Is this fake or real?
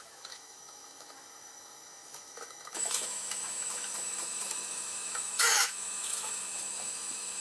fake